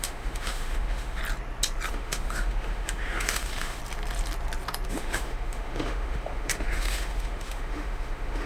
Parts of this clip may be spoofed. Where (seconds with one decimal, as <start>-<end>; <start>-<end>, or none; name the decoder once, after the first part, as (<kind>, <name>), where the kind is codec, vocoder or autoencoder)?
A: 0.0-1.2 (autoencoder, DAC-VAE); 1.9-3.8; 4.9-8.5